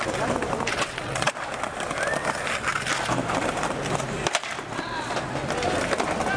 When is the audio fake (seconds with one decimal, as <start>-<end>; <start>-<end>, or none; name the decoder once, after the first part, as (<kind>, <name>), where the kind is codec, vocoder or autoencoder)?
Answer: 0.7-1.3 (vocoder, WaveNeXt)